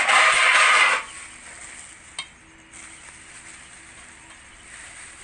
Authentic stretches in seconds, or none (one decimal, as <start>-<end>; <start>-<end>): 0.0-0.5; 1.2-5.2